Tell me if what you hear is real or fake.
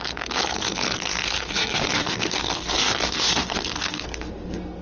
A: fake